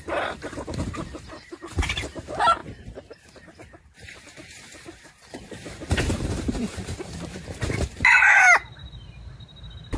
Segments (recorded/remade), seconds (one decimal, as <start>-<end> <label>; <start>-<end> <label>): 0.0-10.0 remade